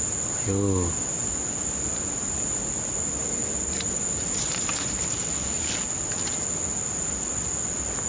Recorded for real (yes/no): yes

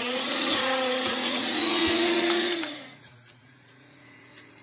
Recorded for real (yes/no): no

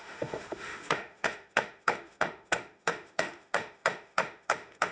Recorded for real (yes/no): no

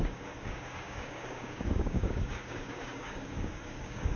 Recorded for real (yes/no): no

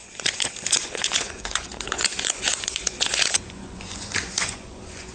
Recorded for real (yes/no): no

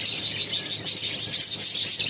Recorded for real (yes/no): yes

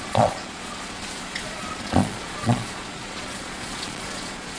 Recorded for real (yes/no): no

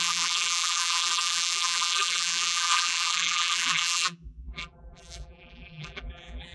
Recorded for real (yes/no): no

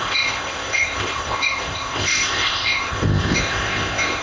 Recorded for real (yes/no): no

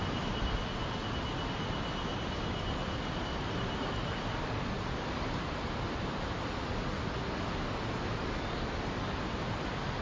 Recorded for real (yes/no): yes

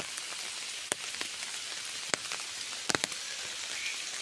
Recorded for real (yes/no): yes